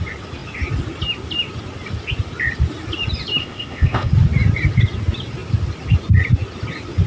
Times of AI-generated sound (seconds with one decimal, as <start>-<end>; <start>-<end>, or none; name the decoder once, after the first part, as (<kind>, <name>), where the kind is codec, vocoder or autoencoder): 3.4-4.1 (codec, ZipCodec)